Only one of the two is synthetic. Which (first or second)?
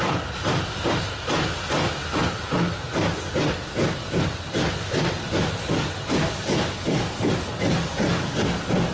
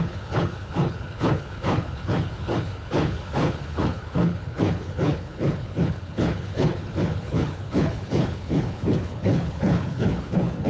second